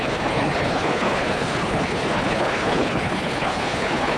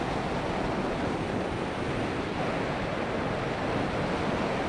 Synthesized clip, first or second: first